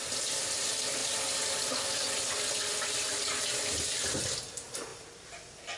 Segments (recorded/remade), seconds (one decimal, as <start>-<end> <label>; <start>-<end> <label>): 0.0-5.8 recorded